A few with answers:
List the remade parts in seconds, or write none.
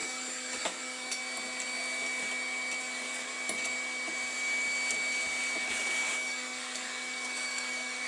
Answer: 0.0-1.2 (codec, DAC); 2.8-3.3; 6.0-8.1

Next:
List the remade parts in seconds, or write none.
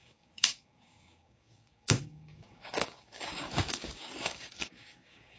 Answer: 0.0-5.4 (codec, DAC)